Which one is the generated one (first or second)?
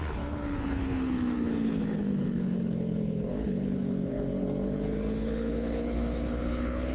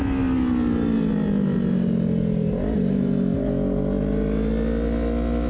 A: first